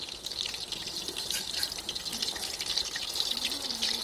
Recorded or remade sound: recorded